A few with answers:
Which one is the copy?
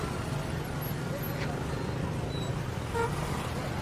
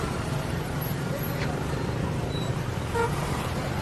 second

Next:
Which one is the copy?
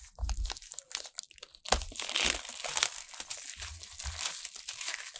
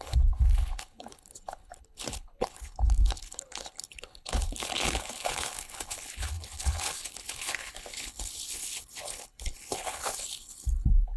second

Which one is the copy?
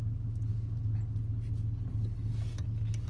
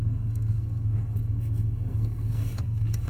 second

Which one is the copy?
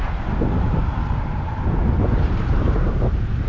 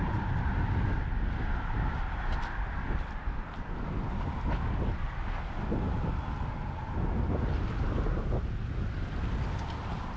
first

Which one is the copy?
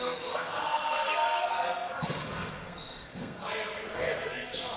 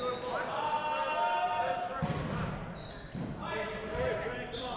first